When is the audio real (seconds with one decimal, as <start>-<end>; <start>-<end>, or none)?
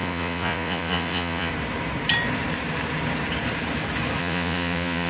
1.5-4.2